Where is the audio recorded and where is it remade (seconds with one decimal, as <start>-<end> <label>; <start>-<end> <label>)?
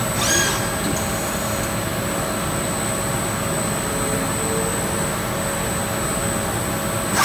0.0-7.2 recorded